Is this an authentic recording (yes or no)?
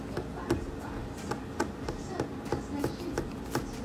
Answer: yes